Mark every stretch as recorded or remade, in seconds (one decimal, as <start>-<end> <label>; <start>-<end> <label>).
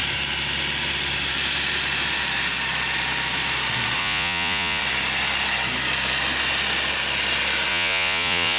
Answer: 0.0-4.0 recorded; 4.0-4.8 remade; 4.8-7.7 recorded; 7.7-8.6 remade